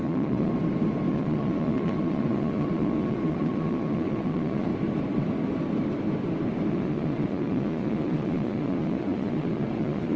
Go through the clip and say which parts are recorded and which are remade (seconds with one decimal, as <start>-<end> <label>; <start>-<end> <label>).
0.0-0.5 remade; 0.5-1.1 recorded; 1.1-4.7 remade; 4.7-6.7 recorded; 6.7-10.2 remade